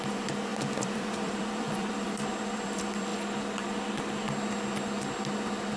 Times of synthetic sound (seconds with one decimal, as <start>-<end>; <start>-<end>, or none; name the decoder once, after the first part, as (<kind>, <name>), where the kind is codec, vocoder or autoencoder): 0.0-3.1 (vocoder, BigVGAN v2); 5.3-5.8